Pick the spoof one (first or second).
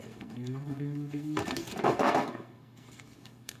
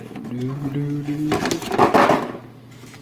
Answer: first